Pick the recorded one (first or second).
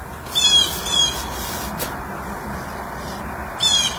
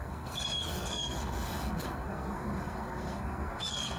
first